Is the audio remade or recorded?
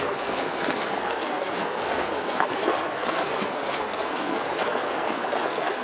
remade